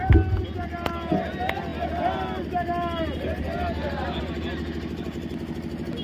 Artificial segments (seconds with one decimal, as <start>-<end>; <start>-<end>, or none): none